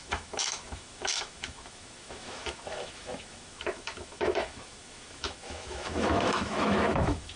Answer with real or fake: fake